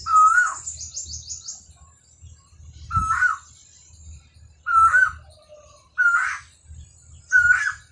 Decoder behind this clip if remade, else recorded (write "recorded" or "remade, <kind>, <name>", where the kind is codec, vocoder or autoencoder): recorded